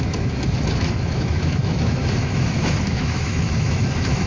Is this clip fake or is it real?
fake